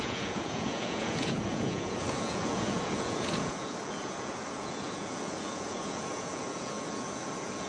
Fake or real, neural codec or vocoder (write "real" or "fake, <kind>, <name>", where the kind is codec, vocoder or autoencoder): fake, vocoder, Vocos